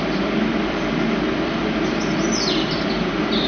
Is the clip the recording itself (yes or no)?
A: no